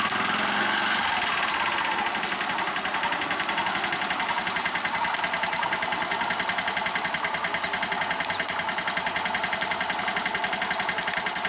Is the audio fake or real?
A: real